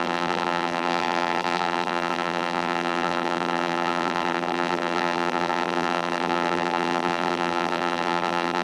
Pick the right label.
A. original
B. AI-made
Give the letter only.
B